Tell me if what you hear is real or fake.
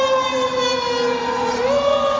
real